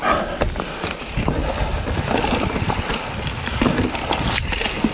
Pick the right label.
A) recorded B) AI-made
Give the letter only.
A